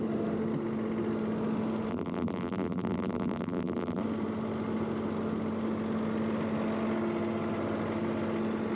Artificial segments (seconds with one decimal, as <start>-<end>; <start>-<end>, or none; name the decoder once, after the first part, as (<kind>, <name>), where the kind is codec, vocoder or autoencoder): 1.9-4.0 (vocoder, BigVGAN v2)

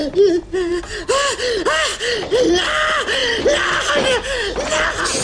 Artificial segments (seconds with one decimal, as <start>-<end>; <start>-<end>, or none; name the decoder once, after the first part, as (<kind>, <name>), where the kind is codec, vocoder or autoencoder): 1.9-2.5 (vocoder, BigVGAN v2); 3.2-3.9

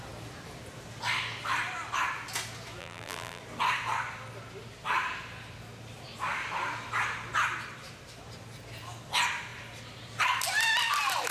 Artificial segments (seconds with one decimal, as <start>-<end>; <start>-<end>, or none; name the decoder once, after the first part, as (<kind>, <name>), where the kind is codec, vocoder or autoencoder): 2.8-3.4 (vocoder, BigVGAN v2)

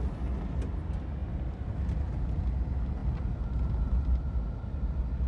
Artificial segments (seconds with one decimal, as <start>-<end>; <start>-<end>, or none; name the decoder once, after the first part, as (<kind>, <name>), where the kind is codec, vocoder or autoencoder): 1.2-2.5 (vocoder, BigVGAN v2)

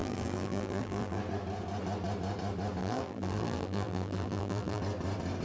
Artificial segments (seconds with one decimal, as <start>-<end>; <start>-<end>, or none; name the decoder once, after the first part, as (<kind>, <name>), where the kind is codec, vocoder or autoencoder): 0.0-1.2 (vocoder, BigVGAN v2); 2.8-4.8

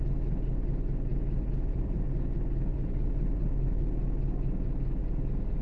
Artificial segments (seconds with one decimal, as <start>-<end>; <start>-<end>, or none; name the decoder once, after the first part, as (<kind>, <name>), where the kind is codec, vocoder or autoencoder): 1.1-2.1 (vocoder, BigVGAN v2); 2.7-3.8

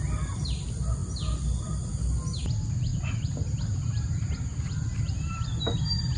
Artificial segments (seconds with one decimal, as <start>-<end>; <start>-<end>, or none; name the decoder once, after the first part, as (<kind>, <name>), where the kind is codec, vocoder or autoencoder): none